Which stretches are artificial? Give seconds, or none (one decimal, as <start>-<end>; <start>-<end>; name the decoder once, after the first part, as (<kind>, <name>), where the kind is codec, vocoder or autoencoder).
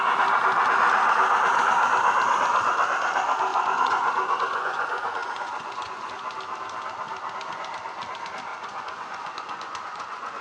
3.5-6.1 (vocoder, Vocos); 8.5-10.4